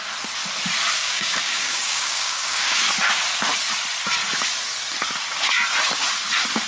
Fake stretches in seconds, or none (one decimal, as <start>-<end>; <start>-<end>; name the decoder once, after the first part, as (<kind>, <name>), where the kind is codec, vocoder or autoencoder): 1.0-2.9 (codec, DAC)